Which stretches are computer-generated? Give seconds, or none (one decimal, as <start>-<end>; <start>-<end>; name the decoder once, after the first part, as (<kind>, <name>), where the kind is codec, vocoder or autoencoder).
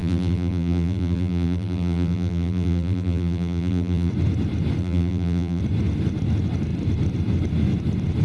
0.0-4.1 (vocoder, BigVGAN v2); 4.8-5.6